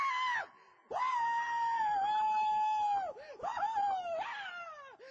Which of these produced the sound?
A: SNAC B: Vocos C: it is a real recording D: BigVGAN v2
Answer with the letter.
C